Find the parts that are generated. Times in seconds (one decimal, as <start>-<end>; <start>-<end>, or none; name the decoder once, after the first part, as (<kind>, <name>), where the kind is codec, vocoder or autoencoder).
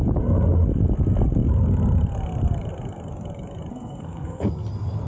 3.7-4.5 (codec, SNAC)